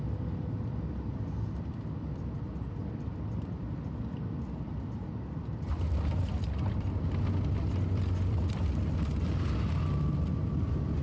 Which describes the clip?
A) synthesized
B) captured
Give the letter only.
B